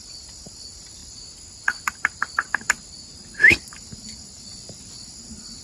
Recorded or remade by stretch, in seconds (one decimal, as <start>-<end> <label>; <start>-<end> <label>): 0.0-5.6 recorded